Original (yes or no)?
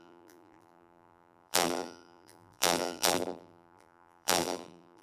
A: no